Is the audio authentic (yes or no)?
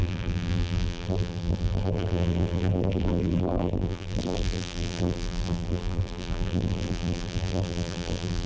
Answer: no